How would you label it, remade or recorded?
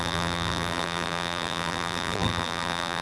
remade